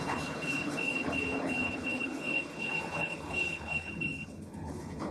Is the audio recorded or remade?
remade